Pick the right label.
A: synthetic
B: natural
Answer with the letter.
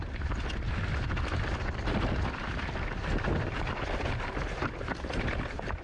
B